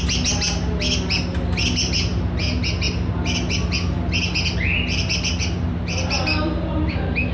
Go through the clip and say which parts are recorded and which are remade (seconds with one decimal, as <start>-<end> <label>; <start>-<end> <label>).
0.0-7.3 recorded